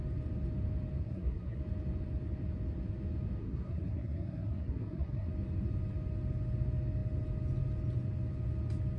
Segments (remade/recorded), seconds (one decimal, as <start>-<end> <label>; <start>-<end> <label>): 0.0-1.0 recorded; 1.0-1.6 remade; 1.6-3.4 recorded; 3.4-5.3 remade; 5.3-9.0 recorded